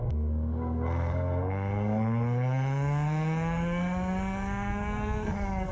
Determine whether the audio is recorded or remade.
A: remade